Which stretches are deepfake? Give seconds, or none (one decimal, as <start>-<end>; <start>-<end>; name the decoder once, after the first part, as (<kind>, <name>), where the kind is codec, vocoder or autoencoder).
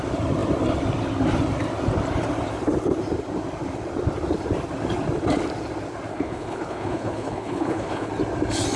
6.1-8.1 (codec, HILCodec)